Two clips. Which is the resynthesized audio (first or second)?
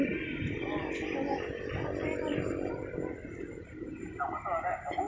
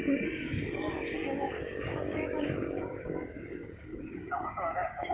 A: second